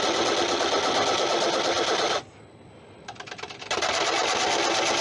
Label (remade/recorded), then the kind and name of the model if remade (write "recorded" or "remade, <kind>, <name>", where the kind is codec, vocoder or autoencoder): recorded